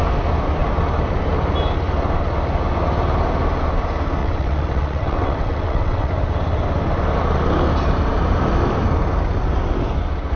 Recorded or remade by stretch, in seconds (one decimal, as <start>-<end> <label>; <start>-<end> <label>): 0.0-4.2 recorded; 4.2-6.1 remade; 6.1-10.4 recorded